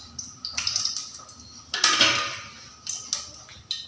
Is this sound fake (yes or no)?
no